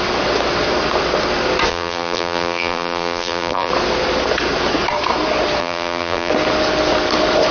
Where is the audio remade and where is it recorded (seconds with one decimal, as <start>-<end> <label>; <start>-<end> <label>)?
0.0-1.7 recorded; 1.7-3.7 remade; 3.7-5.6 recorded; 5.6-6.3 remade; 6.3-7.5 recorded